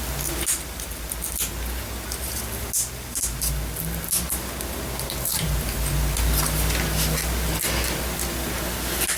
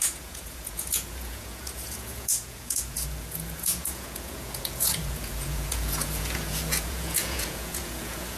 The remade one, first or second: second